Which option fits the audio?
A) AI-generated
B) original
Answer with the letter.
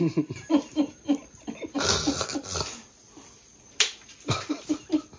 B